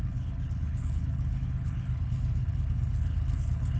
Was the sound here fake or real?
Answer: fake